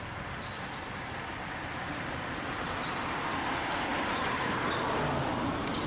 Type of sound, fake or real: real